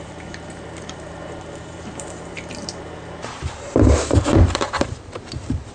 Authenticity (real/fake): fake